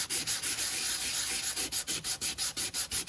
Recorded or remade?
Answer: recorded